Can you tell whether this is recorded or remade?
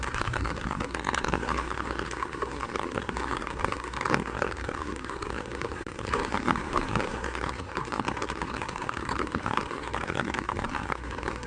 remade